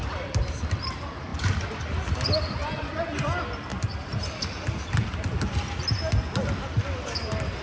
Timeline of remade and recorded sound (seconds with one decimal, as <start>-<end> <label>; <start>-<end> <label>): 0.0-3.7 remade; 3.7-7.6 recorded